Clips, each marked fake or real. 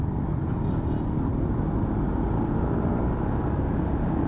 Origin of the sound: real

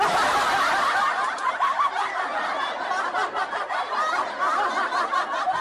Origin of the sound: real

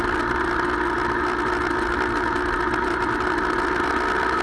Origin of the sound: real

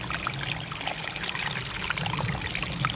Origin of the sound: real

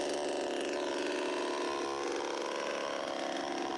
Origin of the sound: real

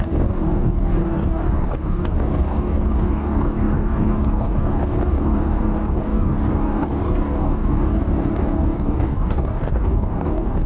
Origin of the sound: fake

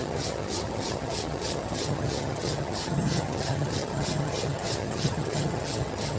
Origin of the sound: fake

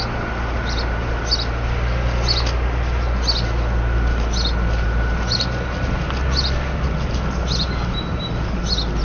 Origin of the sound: real